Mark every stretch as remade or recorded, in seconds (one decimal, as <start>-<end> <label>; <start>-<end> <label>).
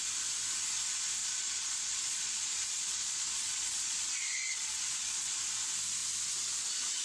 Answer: 0.0-1.2 recorded; 1.2-5.4 remade; 5.4-7.0 recorded